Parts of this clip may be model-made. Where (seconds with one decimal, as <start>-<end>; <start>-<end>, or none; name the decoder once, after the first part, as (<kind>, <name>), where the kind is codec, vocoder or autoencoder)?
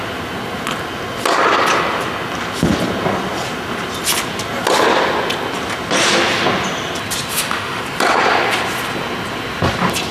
7.3-7.8 (autoencoder, DAC-VAE)